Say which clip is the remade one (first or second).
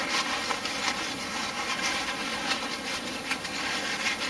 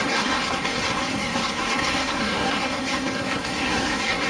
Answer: second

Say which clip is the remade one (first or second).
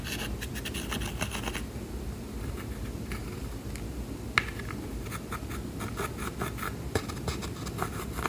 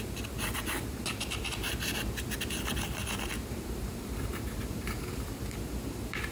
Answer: second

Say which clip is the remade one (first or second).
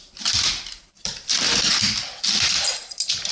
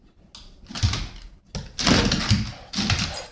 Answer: first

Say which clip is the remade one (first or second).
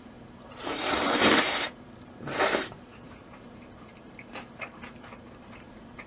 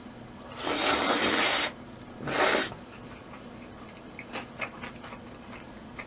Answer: first